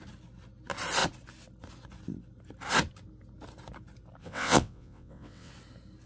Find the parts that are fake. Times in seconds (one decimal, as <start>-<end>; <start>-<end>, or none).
4.2-5.5